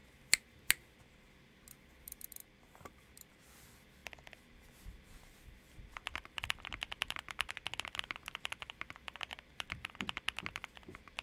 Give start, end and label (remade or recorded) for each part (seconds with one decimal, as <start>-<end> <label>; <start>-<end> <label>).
0.0-1.7 recorded; 1.7-11.2 remade